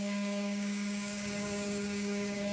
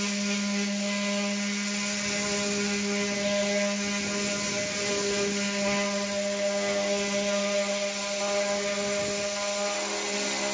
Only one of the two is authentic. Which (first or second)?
second